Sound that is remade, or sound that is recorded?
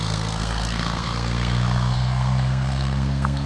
remade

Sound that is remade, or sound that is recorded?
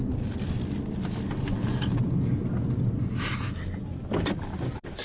recorded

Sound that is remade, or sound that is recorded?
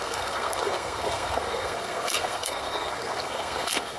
remade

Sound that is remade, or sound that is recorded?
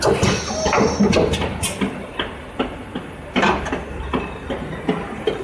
recorded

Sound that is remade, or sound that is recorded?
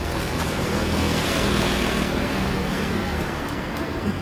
remade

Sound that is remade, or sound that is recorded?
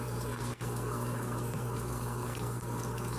remade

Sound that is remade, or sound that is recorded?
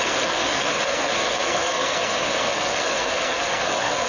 remade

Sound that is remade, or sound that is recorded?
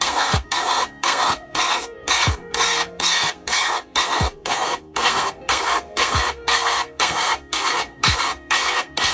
remade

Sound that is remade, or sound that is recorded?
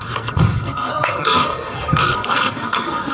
remade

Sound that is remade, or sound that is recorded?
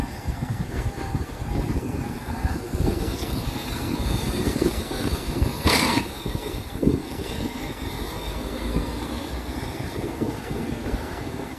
remade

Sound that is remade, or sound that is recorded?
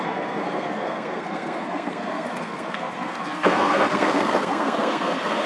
remade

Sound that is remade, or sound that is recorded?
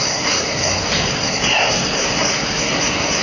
remade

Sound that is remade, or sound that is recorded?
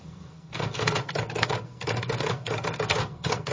remade